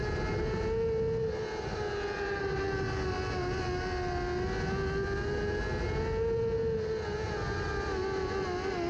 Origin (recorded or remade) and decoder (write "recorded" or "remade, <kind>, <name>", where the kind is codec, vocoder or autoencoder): recorded